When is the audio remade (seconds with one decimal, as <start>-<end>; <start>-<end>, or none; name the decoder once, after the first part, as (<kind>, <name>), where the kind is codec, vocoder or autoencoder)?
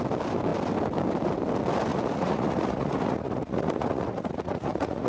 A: 1.9-5.1 (vocoder, Vocos)